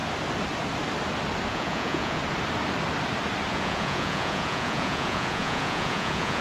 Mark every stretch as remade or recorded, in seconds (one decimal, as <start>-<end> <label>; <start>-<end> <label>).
0.0-1.5 recorded; 1.5-2.2 remade; 2.2-3.5 recorded; 3.5-6.4 remade